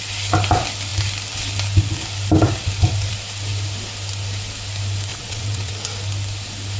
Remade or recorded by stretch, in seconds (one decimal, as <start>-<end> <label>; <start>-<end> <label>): 0.0-5.1 recorded; 5.1-5.7 remade; 5.7-6.8 recorded